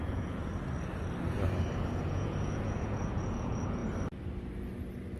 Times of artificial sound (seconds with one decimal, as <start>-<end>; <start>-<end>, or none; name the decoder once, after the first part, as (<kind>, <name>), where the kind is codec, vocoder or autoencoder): 0.0-0.5 (vocoder, Vocos); 1.8-3.8